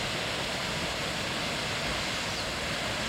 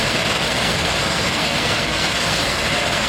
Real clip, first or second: first